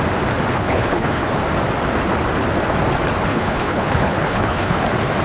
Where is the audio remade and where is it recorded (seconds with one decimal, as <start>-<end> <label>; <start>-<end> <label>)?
0.0-0.5 recorded; 0.5-1.3 remade; 1.3-3.3 recorded; 3.3-4.8 remade; 4.8-5.2 recorded